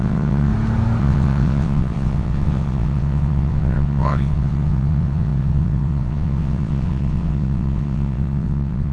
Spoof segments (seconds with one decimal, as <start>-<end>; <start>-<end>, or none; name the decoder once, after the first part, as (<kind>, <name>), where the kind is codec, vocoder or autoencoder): 0.0-0.5 (vocoder, WaveNeXt); 1.0-8.9